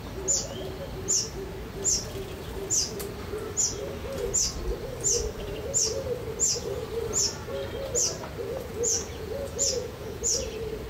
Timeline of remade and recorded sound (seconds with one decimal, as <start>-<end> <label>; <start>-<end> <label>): 0.0-8.7 recorded; 8.7-10.3 remade; 10.3-10.9 recorded